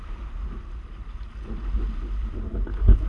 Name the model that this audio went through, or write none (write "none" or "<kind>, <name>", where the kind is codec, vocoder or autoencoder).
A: none